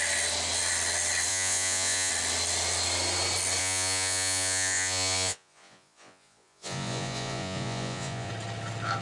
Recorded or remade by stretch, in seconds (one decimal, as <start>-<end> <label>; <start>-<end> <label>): 0.0-1.3 recorded; 1.3-2.1 remade; 2.1-3.6 recorded; 3.6-8.3 remade; 8.3-9.0 recorded